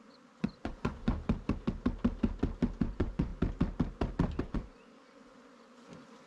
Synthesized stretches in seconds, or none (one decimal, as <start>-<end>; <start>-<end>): 0.0-1.1; 2.8-3.3; 4.4-6.3